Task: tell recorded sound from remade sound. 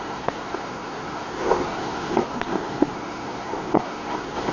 remade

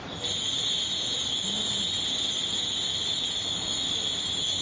recorded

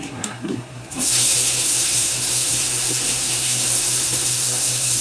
remade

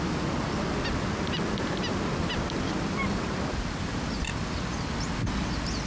recorded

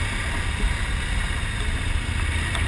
recorded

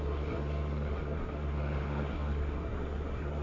remade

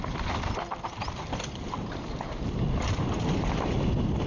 recorded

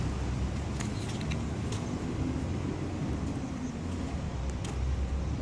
recorded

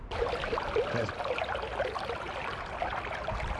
recorded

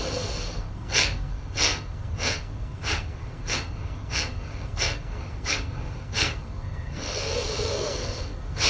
remade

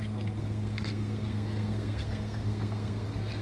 remade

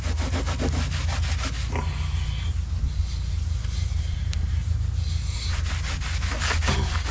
recorded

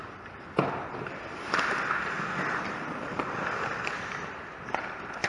recorded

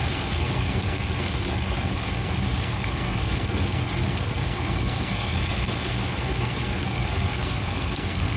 remade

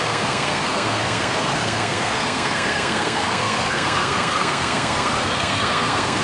remade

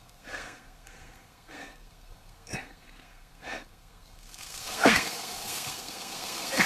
remade